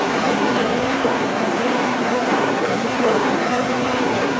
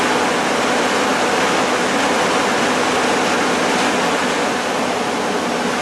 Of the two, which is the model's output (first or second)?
first